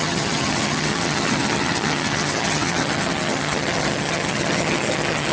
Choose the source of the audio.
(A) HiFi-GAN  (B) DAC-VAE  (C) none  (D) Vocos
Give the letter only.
A